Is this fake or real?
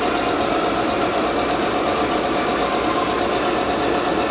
real